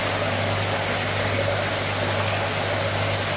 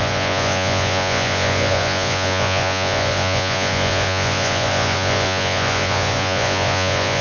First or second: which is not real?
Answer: second